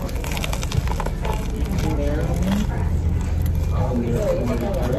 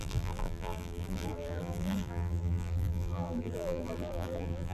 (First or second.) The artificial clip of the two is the second